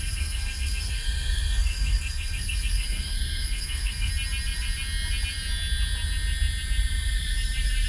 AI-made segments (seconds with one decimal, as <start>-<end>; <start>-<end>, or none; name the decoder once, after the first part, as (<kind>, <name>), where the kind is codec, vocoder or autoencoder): 0.0-4.1 (codec, SNAC)